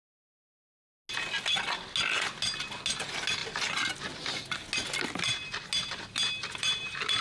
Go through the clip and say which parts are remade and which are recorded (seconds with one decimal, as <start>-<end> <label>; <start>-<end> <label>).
0.0-7.2 recorded